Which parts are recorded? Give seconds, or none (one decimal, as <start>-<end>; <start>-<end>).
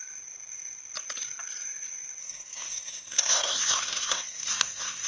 0.0-2.2